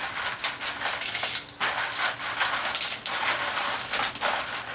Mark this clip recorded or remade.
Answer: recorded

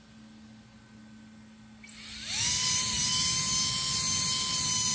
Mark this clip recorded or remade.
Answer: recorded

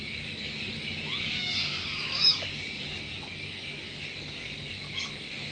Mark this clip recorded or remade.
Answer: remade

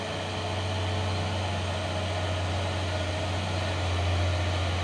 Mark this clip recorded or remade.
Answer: recorded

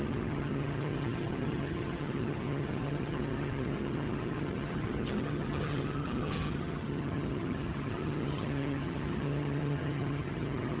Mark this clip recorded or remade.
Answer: remade